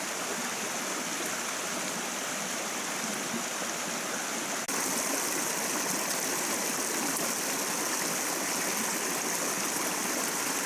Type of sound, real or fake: real